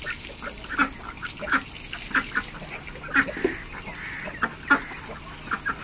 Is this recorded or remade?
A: recorded